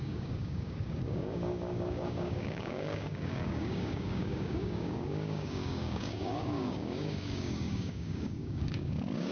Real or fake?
fake